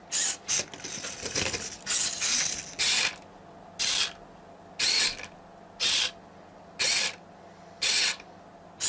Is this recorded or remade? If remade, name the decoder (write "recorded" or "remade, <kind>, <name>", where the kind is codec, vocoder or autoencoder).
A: recorded